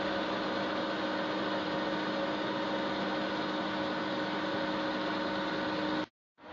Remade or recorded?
recorded